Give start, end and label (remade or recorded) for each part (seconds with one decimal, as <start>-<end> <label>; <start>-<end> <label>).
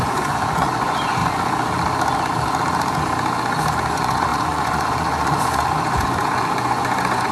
0.0-1.2 remade; 1.2-3.9 recorded; 3.9-7.3 remade